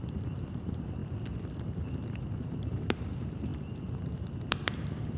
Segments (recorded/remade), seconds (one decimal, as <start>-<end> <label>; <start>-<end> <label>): 0.0-1.0 remade; 1.0-2.4 recorded; 2.4-5.2 remade